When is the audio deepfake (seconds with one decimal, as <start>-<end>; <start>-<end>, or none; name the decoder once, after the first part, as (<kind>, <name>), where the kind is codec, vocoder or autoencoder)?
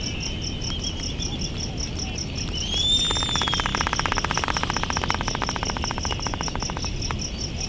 none